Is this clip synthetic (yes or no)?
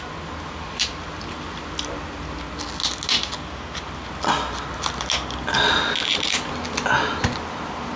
no